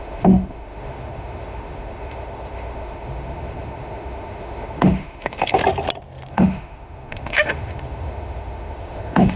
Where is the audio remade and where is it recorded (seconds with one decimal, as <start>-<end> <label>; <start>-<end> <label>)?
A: 0.0-5.6 remade; 5.6-6.3 recorded; 6.3-9.4 remade